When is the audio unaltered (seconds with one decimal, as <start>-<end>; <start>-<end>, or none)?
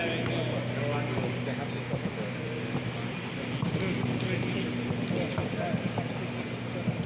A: 0.0-7.1